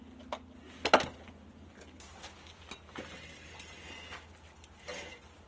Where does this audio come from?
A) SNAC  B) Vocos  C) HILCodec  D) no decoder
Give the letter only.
D